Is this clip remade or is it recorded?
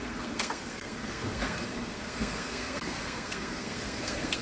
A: remade